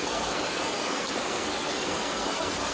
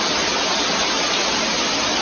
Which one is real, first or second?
second